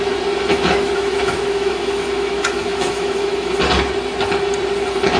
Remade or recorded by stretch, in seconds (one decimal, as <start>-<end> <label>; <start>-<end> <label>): 0.0-0.5 recorded; 0.5-3.6 remade; 3.6-5.2 recorded